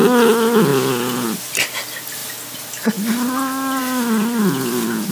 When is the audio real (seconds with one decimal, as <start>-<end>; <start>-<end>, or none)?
0.0-0.7; 1.6-5.1